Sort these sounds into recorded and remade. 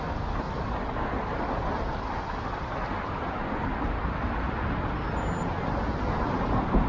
recorded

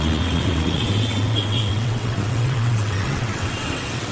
remade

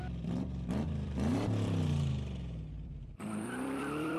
remade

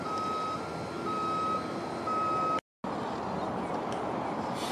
recorded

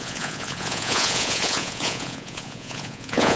remade